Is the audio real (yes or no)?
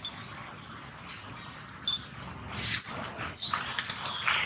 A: yes